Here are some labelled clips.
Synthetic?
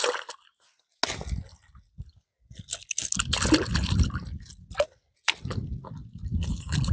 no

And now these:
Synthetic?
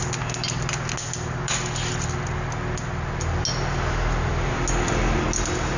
no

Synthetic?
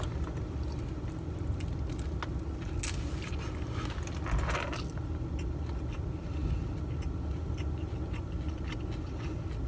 no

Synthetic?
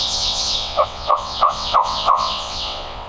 yes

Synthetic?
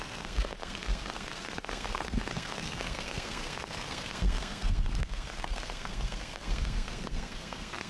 yes